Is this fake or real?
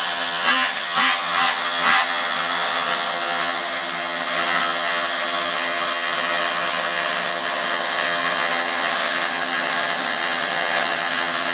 fake